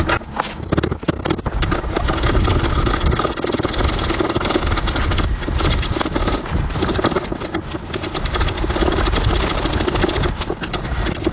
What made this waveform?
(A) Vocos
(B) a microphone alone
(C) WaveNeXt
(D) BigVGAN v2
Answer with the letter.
B